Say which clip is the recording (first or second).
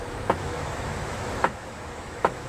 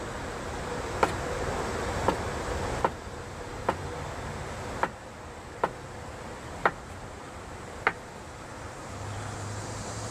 second